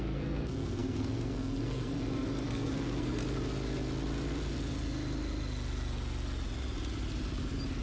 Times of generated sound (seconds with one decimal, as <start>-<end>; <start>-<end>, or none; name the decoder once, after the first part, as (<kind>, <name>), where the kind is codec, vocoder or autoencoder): 0.0-3.2 (codec, SNAC)